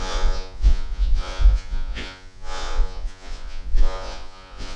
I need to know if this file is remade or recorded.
remade